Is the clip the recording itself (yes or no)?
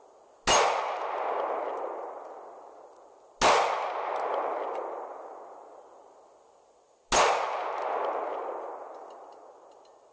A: yes